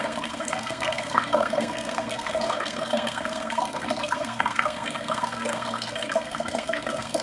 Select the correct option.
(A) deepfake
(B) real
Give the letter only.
A